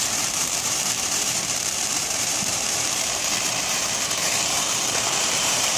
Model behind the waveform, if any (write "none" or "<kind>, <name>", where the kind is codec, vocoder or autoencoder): vocoder, BigVGAN v2